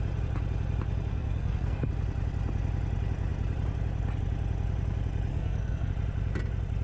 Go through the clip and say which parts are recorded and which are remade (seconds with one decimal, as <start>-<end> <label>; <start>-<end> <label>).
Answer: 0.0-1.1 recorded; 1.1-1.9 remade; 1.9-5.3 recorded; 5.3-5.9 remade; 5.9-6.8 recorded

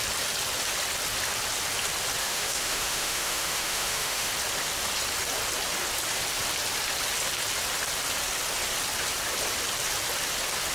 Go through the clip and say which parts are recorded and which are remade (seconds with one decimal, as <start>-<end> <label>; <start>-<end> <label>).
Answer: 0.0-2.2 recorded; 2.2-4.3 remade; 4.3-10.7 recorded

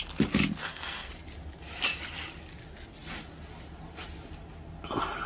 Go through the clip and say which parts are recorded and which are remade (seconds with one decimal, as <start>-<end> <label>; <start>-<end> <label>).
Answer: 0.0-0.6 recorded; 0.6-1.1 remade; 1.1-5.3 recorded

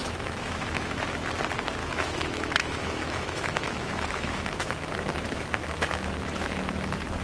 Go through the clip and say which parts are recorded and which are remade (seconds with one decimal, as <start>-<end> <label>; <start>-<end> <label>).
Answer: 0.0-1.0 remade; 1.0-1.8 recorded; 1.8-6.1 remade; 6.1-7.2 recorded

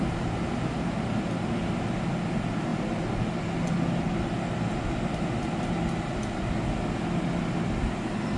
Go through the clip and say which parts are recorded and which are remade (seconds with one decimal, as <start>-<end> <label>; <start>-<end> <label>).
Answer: 0.0-8.4 recorded

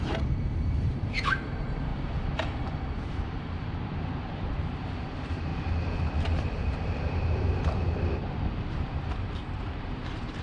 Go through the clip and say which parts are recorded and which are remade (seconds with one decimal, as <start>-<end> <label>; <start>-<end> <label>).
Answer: 0.0-1.9 remade; 1.9-3.4 recorded; 3.4-5.5 remade; 5.5-8.7 recorded; 8.7-10.4 remade

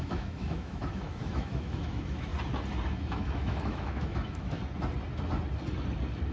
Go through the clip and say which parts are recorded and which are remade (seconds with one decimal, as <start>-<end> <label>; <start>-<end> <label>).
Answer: 0.0-2.3 remade; 2.3-2.9 recorded; 2.9-4.6 remade; 4.6-6.3 recorded